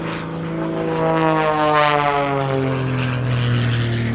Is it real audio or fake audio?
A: real